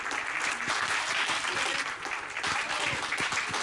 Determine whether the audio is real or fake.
real